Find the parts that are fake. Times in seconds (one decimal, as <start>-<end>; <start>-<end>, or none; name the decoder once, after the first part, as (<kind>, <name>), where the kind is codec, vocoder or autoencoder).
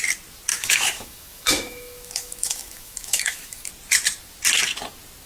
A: 0.5-3.7 (autoencoder, DAC-VAE)